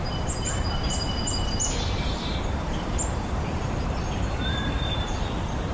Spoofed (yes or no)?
yes